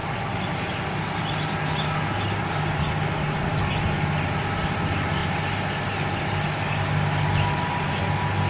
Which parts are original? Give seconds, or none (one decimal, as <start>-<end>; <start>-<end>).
0.0-8.5